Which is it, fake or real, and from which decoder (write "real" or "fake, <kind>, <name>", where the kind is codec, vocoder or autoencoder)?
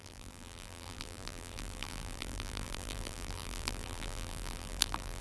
fake, vocoder, BigVGAN v2